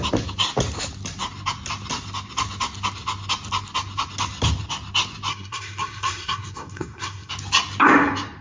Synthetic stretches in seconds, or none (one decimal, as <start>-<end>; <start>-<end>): 5.3-7.3